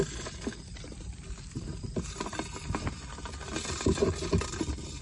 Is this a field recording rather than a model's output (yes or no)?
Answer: yes